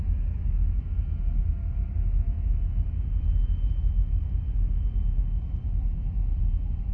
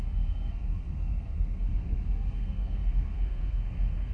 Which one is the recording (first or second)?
first